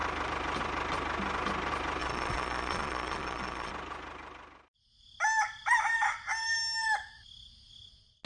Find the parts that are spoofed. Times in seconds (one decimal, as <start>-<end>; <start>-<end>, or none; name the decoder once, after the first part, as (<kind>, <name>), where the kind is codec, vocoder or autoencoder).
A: 2.0-3.7 (vocoder, Vocos)